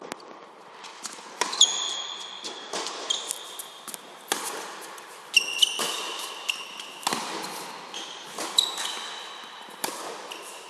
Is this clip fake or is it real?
real